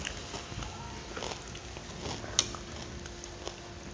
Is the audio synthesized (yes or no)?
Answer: no